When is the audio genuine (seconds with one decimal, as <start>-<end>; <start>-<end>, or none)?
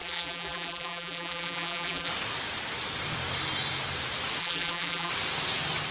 2.1-4.4; 5.1-5.9